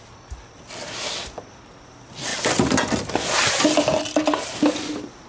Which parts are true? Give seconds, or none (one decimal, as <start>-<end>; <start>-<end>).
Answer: 0.0-5.3